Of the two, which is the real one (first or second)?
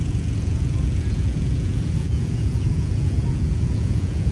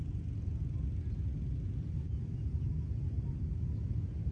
second